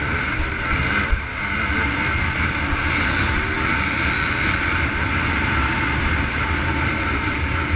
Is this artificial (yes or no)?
no